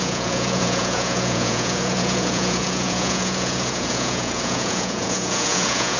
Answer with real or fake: fake